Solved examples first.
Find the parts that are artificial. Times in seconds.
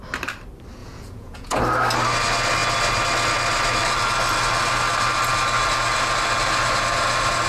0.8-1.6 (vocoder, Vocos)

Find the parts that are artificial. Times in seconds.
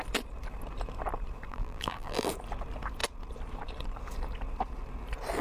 1.5-2.3 (vocoder, BigVGAN v2)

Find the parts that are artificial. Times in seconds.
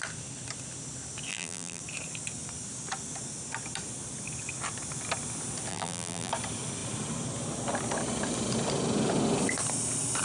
1.3-1.8 (vocoder, BigVGAN v2); 5.7-6.3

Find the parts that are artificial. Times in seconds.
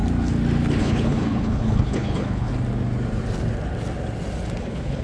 0.8-2.5 (codec, HILCodec); 4.6-5.0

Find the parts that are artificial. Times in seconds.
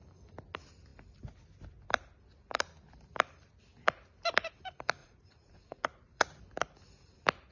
5.0-6.4 (vocoder, Vocos)